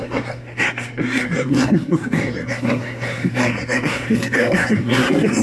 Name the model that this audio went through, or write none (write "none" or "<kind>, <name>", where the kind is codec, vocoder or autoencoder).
codec, SNAC